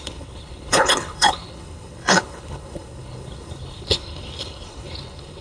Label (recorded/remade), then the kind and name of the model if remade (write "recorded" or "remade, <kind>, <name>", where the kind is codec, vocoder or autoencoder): remade, codec, HILCodec